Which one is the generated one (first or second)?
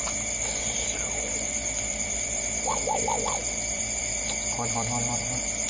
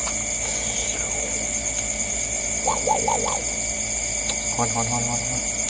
first